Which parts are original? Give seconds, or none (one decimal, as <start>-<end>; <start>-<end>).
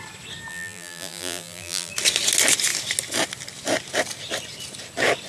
0.0-0.5; 1.9-5.3